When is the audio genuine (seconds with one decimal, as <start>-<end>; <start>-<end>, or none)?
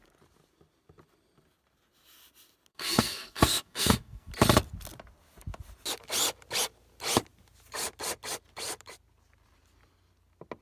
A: 0.0-2.7; 4.3-10.6